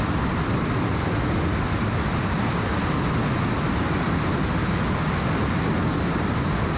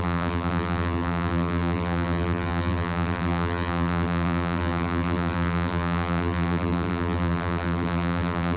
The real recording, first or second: first